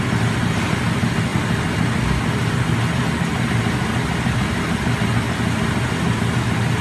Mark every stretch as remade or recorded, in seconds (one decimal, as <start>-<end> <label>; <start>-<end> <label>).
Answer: 0.0-6.8 recorded